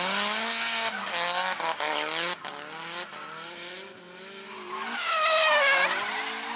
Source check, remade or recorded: recorded